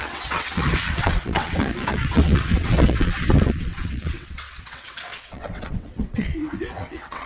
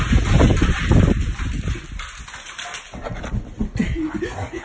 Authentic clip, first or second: second